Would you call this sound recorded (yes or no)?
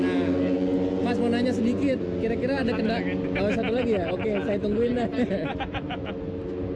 yes